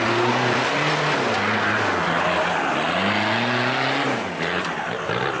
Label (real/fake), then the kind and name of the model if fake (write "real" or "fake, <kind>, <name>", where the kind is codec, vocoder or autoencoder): real